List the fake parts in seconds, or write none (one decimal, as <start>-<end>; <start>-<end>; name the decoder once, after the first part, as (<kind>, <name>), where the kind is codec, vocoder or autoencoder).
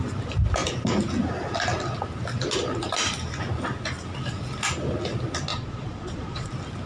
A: 5.5-6.5 (vocoder, Vocos)